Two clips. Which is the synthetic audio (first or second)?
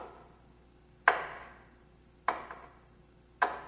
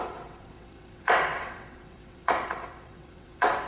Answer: second